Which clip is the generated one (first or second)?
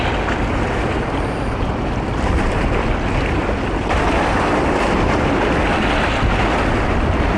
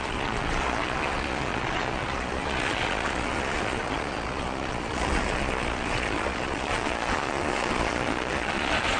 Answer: second